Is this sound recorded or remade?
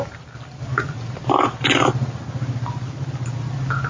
recorded